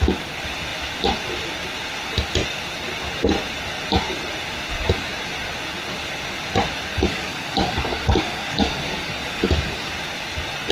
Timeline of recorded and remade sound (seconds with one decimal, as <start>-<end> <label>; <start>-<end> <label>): 0.0-6.9 recorded; 6.9-9.9 remade; 9.9-10.7 recorded